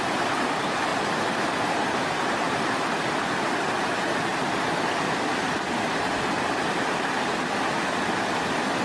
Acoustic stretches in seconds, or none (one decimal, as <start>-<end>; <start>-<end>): 0.0-0.9; 2.7-8.8